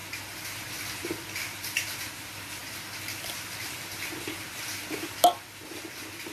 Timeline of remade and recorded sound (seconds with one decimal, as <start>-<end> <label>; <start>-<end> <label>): 0.0-0.8 recorded; 0.8-6.3 remade